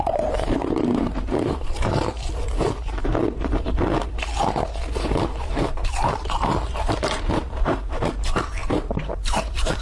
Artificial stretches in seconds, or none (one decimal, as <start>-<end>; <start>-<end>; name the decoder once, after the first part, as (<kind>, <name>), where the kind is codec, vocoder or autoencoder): 0.0-3.1 (vocoder, BigVGAN v2); 5.4-9.8